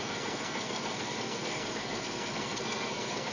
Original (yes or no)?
no